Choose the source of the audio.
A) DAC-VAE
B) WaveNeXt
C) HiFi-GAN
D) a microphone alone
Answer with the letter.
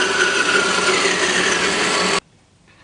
D